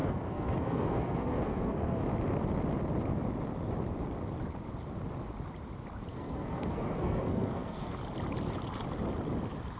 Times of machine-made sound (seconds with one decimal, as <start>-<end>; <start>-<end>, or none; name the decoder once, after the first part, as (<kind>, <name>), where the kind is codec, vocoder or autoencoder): 0.0-2.0 (codec, SNAC); 6.1-7.9